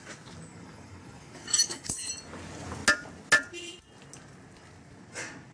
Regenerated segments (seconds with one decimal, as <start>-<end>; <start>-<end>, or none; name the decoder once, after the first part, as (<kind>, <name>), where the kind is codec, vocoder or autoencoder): 0.5-2.1 (codec, DAC)